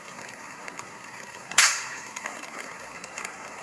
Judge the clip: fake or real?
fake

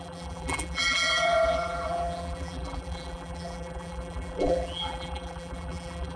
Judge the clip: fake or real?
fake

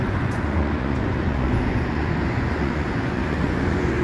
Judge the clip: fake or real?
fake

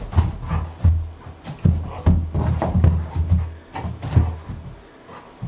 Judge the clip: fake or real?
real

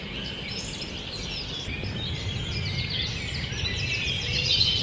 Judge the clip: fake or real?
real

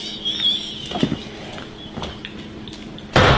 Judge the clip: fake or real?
real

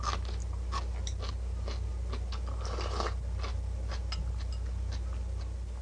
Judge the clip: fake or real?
real